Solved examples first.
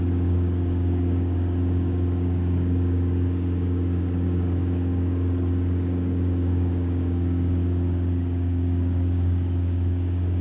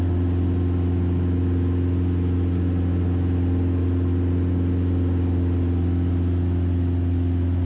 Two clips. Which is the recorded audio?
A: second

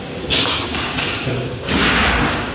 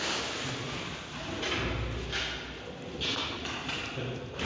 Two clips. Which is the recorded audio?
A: second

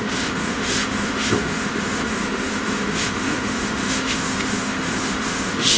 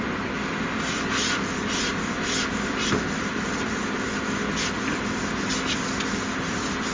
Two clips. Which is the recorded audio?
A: second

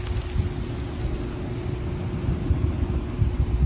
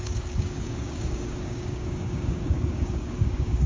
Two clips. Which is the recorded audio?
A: first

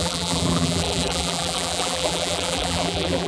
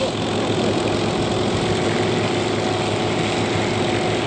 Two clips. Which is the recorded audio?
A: second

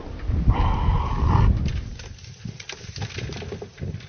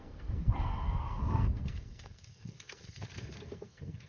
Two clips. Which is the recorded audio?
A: first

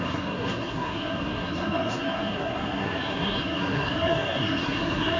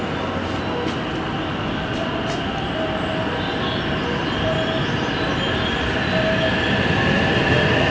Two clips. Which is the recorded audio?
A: second